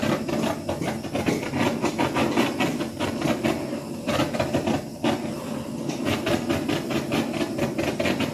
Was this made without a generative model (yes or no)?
yes